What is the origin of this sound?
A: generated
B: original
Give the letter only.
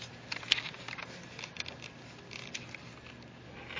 B